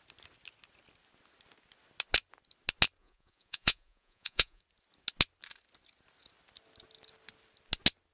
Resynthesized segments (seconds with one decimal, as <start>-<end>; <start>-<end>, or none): 3.0-4.6